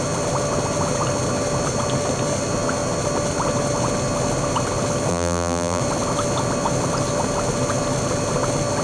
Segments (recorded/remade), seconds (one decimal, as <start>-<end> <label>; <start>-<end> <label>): 0.0-5.1 recorded; 5.1-5.8 remade; 5.8-8.8 recorded